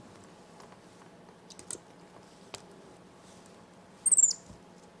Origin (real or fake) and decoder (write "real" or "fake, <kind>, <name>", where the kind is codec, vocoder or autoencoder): real